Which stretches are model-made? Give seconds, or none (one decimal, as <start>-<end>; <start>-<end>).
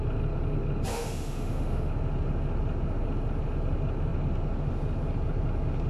0.9-1.9